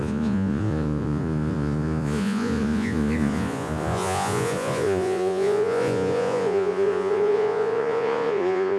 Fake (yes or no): yes